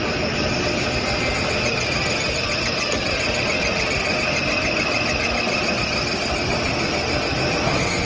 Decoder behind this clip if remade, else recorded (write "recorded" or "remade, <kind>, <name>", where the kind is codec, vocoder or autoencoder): recorded